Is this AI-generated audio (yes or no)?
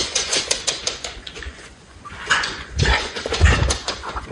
yes